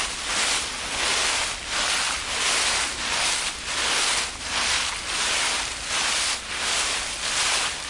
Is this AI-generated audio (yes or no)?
no